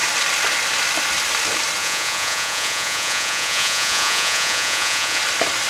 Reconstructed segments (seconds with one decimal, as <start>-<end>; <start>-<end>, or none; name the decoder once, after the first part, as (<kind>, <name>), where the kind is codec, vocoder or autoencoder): 1.8-5.2 (vocoder, Vocos)

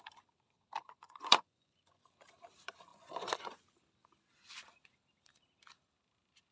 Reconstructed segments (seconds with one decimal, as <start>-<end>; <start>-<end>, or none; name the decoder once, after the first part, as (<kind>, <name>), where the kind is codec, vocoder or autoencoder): 0.8-2.0 (vocoder, Vocos); 2.9-3.6